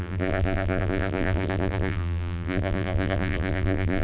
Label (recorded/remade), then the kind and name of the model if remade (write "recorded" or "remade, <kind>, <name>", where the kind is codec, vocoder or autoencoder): remade, vocoder, BigVGAN v2